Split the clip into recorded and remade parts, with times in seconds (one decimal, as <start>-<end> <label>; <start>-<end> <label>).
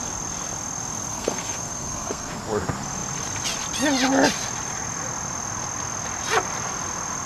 0.0-1.1 recorded; 1.1-2.4 remade; 2.4-7.3 recorded